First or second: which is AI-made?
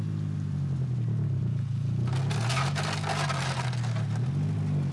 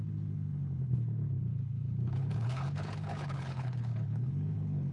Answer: second